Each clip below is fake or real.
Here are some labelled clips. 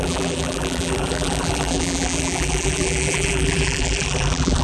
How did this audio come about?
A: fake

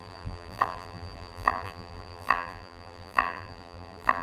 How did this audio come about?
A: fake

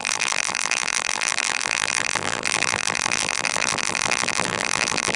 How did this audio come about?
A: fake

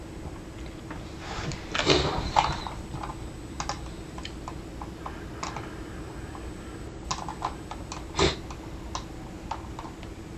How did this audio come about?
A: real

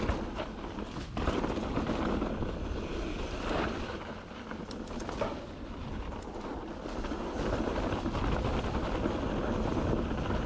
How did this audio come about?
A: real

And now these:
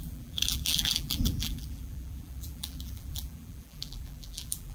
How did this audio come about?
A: fake